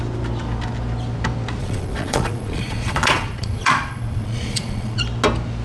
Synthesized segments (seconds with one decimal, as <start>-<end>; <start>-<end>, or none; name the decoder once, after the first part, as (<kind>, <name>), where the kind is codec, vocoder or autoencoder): 1.6-5.0 (vocoder, Vocos)